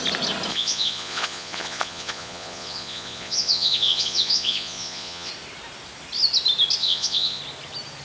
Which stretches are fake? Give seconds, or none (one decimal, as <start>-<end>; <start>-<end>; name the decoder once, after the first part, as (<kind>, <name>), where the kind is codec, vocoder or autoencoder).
0.5-5.3 (vocoder, Vocos); 6.8-7.4